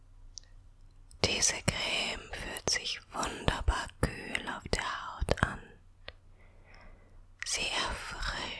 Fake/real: real